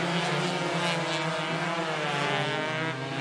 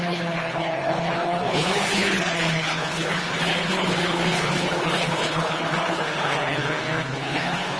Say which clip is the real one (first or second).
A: first